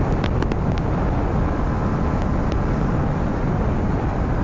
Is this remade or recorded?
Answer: recorded